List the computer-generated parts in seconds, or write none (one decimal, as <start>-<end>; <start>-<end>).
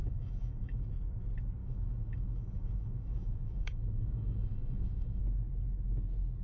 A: 0.0-0.9; 1.6-5.2